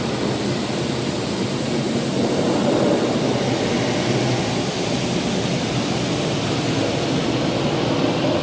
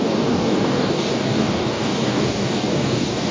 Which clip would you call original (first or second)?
first